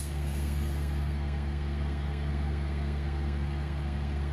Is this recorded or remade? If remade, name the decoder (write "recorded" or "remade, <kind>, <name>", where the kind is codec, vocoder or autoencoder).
remade, codec, SNAC